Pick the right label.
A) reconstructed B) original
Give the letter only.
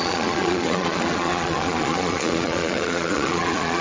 A